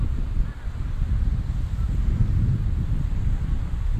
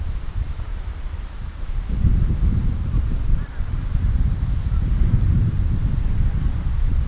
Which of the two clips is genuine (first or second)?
first